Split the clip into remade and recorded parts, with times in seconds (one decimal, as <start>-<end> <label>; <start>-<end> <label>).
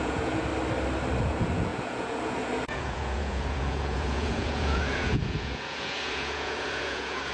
0.0-0.5 remade; 0.5-1.2 recorded; 1.2-7.3 remade